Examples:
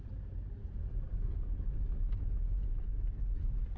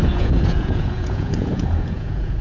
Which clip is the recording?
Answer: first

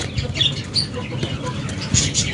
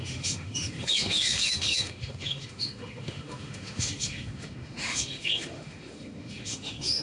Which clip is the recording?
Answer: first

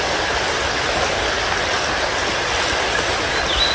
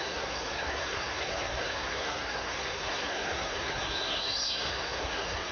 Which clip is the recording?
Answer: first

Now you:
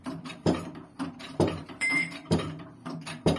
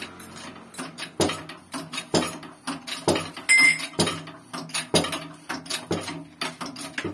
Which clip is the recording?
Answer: second